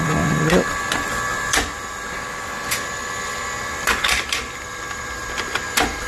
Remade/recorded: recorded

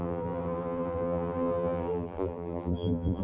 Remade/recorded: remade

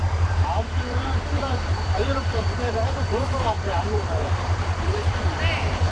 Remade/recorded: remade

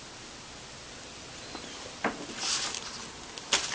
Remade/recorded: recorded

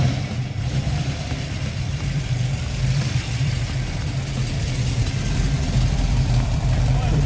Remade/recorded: remade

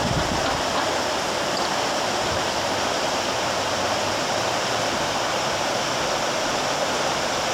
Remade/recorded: remade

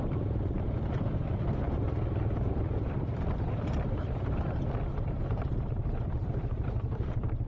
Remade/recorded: remade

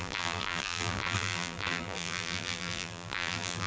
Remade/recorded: remade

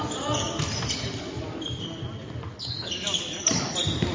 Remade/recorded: recorded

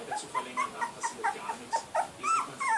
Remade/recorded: recorded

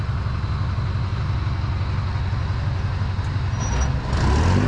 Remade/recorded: recorded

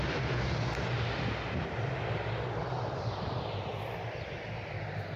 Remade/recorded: recorded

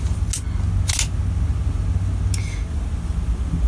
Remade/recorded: recorded